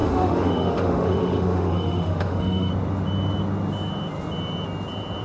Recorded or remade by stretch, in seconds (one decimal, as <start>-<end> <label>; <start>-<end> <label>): 0.0-2.7 remade; 2.7-5.2 recorded